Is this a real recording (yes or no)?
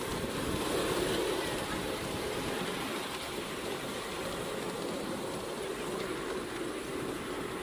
yes